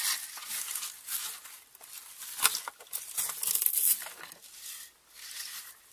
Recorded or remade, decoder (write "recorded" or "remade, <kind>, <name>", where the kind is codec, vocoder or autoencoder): recorded